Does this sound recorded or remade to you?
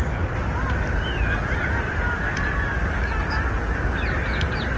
recorded